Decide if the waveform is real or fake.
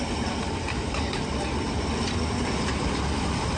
fake